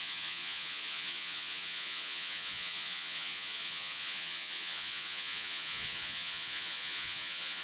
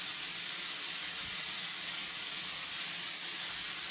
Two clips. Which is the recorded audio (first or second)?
second